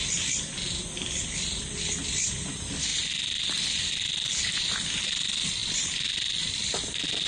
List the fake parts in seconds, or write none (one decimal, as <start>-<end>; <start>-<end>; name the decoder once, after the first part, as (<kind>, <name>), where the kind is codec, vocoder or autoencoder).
none